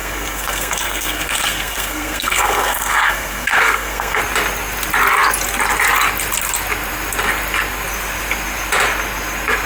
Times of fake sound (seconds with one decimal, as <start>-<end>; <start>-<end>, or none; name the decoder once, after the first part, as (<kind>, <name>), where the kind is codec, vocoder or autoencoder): 0.0-4.2 (codec, SNAC)